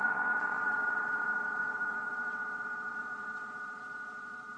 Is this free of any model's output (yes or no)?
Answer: no